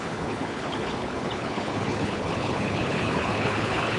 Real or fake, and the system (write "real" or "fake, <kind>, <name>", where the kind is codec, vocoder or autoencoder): fake, codec, HILCodec